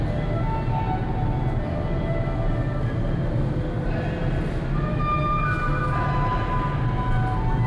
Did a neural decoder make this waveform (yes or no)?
no